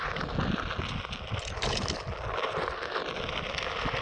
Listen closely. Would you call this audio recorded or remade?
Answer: recorded